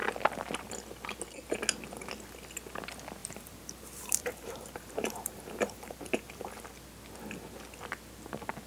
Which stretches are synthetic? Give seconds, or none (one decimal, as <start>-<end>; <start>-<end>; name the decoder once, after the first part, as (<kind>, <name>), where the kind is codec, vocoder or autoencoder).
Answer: 3.2-6.6 (vocoder, BigVGAN v2)